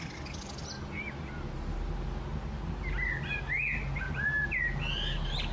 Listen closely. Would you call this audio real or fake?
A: real